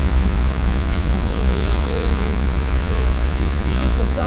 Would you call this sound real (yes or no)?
no